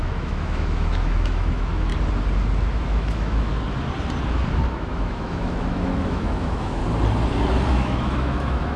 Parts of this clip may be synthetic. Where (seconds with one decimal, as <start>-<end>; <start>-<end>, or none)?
0.0-1.9; 2.7-3.5; 4.7-6.8; 7.7-8.8